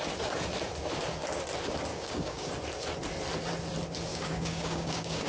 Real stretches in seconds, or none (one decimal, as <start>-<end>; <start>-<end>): 0.0-1.9; 2.5-4.1